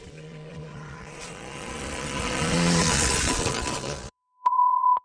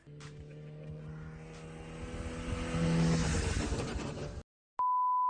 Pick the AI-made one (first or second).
first